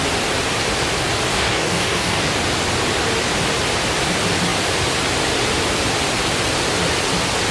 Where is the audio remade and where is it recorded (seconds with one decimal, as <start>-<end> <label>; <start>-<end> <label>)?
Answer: 0.0-1.3 recorded; 1.3-2.3 remade; 2.3-7.5 recorded